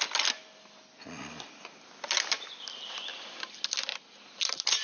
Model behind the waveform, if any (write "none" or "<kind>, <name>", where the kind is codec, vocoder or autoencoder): none